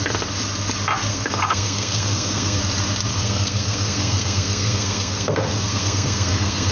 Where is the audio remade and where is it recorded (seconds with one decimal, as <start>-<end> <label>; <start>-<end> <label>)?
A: 0.0-1.1 recorded; 1.1-2.6 remade; 2.6-3.1 recorded; 3.1-6.7 remade